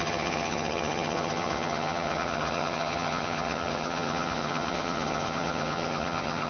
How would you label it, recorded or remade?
remade